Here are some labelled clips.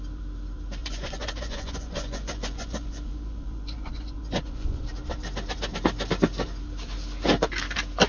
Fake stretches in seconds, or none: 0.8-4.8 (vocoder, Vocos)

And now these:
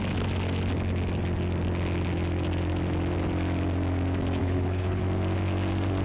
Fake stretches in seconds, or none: 4.4-5.0 (codec, HILCodec)

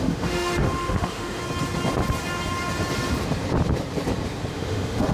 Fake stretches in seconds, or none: 0.0-1.4 (autoencoder, DAC-VAE); 4.5-5.1

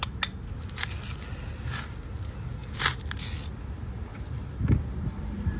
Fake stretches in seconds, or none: 4.1-5.6 (vocoder, BigVGAN v2)